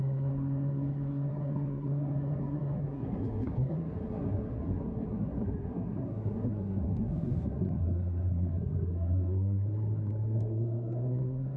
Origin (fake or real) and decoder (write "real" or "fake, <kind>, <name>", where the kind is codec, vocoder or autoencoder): fake, codec, SNAC